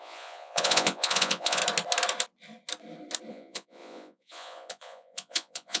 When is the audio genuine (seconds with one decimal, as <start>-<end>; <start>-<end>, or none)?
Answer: 1.6-3.3